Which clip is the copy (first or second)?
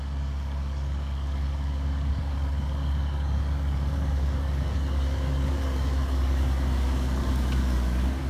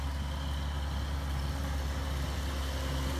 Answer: first